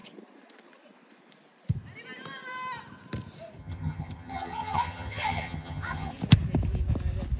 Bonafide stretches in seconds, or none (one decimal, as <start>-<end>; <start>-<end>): 0.0-3.6; 6.1-7.4